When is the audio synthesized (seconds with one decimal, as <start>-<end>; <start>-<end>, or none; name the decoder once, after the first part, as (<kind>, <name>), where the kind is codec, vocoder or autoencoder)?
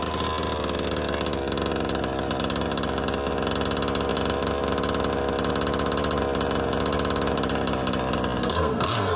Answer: 8.4-9.2 (codec, SNAC)